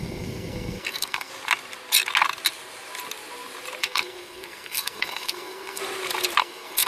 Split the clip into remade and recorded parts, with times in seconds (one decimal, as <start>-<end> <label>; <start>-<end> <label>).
0.0-1.3 remade; 1.3-3.8 recorded; 3.8-5.8 remade; 5.8-6.4 recorded; 6.4-6.9 remade